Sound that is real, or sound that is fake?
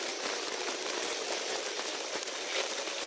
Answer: fake